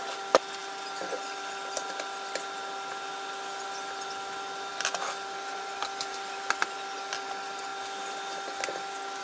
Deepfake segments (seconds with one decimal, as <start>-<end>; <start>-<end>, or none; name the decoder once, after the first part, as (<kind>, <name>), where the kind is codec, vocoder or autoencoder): none